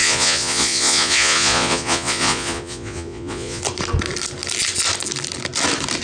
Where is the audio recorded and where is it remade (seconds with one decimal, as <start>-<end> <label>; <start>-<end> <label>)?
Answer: 0.0-3.6 remade; 3.6-6.0 recorded